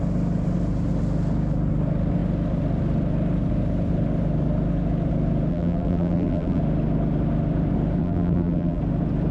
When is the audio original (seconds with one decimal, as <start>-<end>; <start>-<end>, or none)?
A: 0.0-5.5; 6.6-8.0; 8.8-9.3